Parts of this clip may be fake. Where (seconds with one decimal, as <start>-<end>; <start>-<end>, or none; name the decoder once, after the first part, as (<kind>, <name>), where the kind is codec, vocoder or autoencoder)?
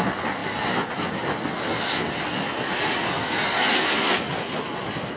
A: none